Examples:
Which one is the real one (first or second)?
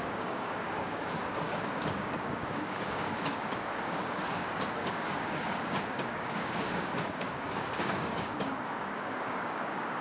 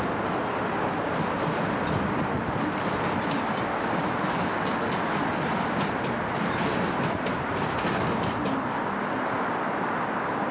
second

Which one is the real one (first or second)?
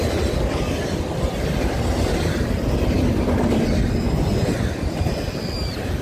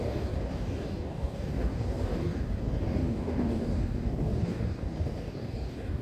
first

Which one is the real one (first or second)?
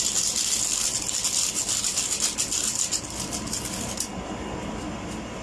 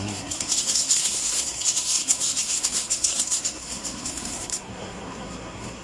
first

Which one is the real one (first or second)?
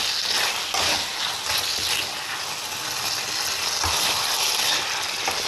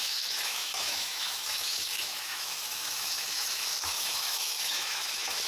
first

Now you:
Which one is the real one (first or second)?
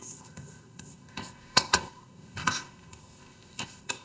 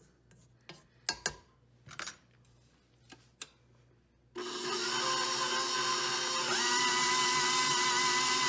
second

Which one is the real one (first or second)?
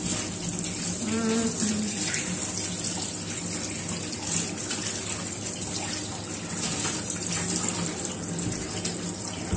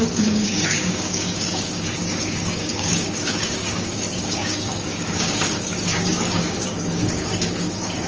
first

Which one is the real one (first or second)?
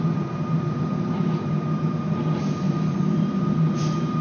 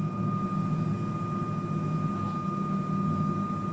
second